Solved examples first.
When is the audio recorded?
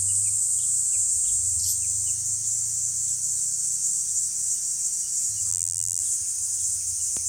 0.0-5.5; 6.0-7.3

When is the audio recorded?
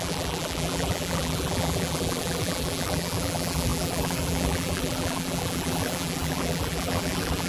none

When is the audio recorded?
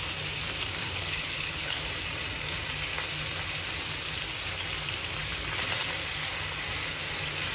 0.0-0.8; 1.8-7.5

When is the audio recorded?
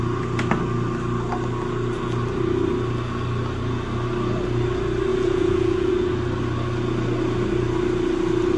0.0-5.1; 5.9-8.6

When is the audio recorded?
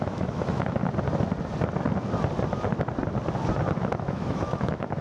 0.8-3.7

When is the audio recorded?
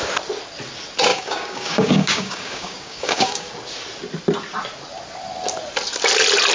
0.0-1.1; 3.5-6.5